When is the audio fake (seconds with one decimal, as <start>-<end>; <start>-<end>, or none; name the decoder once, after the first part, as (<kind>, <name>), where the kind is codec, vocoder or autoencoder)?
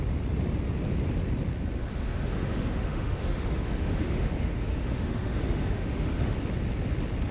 1.9-6.3 (autoencoder, DAC-VAE)